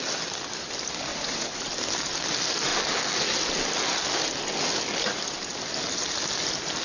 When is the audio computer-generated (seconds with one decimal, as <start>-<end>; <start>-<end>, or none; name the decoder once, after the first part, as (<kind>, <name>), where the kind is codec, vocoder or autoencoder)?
1.1-1.7 (vocoder, Vocos)